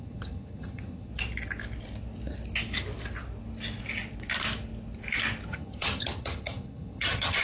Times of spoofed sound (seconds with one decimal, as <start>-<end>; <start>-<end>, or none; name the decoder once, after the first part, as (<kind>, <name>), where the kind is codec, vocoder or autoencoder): 0.0-1.1 (vocoder, HiFi-GAN); 5.5-7.4